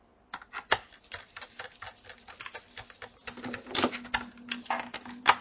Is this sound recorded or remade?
recorded